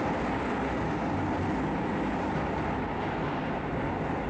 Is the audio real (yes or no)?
yes